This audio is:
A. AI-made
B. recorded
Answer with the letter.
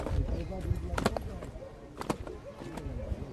B